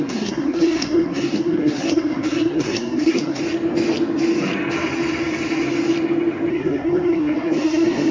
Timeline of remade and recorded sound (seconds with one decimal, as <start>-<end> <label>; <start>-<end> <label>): 0.0-3.4 remade; 3.4-6.5 recorded; 6.5-8.1 remade